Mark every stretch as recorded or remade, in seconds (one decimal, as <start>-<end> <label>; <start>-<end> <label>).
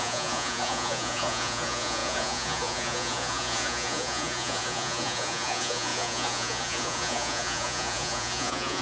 0.0-8.8 remade